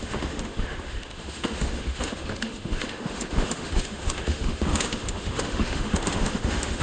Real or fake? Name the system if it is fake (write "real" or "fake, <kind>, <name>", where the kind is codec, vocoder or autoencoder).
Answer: fake, autoencoder, DAC-VAE